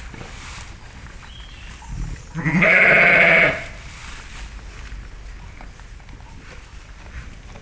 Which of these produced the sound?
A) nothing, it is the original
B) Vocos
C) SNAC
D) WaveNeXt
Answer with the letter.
A